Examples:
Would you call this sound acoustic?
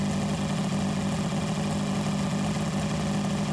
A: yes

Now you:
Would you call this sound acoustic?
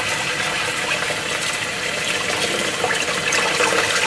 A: yes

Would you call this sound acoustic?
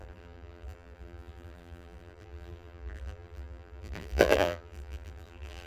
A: no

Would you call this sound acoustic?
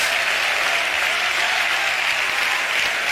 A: yes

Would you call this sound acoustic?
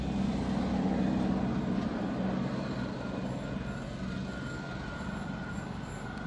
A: yes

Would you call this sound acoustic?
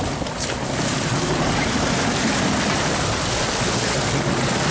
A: yes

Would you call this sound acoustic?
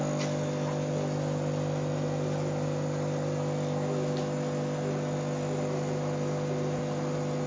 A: yes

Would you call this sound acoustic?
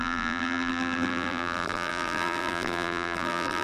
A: no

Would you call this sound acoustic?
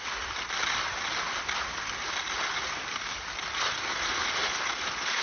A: no